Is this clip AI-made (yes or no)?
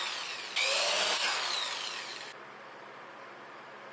no